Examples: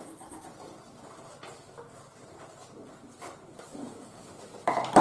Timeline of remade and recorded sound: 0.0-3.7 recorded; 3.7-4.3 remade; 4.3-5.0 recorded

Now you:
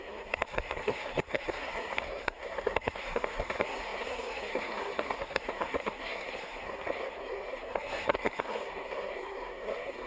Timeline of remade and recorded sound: 0.0-10.1 remade

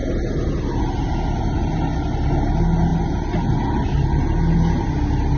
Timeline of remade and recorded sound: 0.0-5.4 recorded

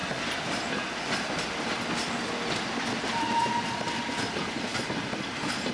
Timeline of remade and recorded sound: 0.0-5.7 recorded

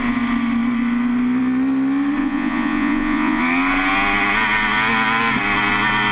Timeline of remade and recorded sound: 0.0-2.2 recorded; 2.2-3.4 remade; 3.4-6.1 recorded

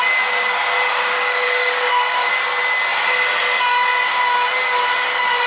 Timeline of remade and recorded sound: 0.0-0.9 recorded; 0.9-2.3 remade; 2.3-5.5 recorded

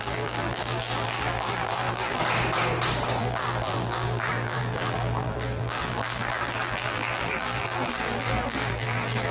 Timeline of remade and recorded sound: 0.0-2.2 remade; 2.2-3.2 recorded; 3.2-9.3 remade

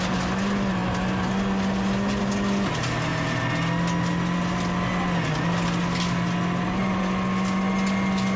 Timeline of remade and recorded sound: 0.0-8.4 recorded